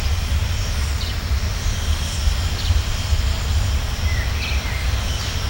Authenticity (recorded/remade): recorded